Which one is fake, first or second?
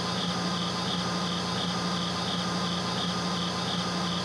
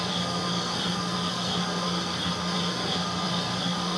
second